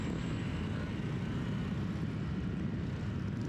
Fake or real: real